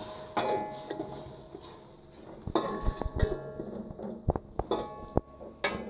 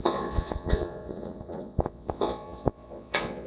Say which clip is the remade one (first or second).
second